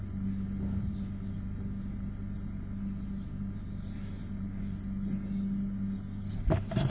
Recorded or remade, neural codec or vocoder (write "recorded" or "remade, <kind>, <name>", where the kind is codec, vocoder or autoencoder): recorded